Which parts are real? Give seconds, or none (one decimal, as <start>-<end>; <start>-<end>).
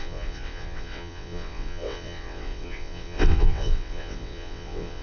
none